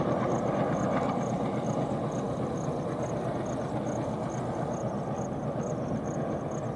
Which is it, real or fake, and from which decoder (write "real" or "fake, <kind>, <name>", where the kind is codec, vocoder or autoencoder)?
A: real